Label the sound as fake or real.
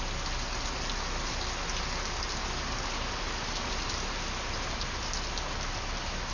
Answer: real